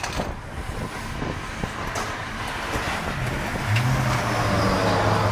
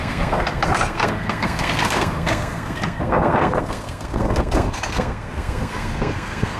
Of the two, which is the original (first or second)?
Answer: first